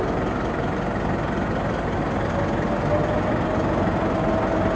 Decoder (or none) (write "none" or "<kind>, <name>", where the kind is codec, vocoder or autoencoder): none